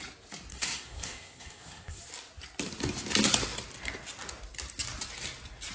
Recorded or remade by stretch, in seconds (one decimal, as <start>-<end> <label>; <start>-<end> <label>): 0.0-0.5 recorded; 0.5-2.0 remade; 2.0-5.7 recorded